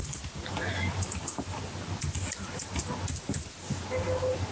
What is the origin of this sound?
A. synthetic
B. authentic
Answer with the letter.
B